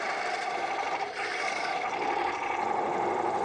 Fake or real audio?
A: fake